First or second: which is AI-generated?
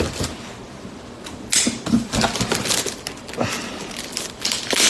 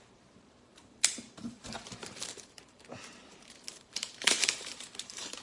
second